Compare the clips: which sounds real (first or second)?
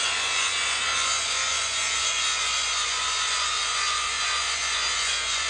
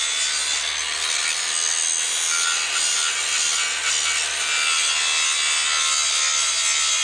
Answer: second